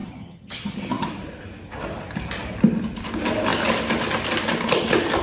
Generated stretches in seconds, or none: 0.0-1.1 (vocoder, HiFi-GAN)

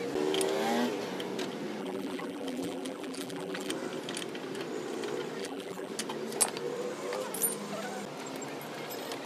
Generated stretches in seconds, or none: 1.8-3.7 (vocoder, BigVGAN v2); 5.4-5.9

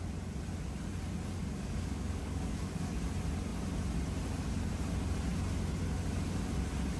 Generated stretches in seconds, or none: 1.4-2.9 (codec, DAC)

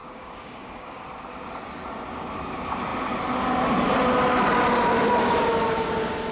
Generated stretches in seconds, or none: 0.0-1.0 (codec, DAC)

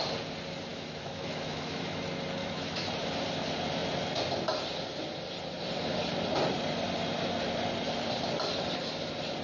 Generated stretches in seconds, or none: 0.7-2.0 (autoencoder, DAC-VAE); 2.4-2.9

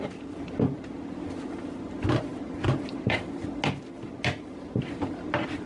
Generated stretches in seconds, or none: none